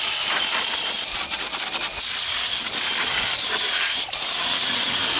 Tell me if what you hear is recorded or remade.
recorded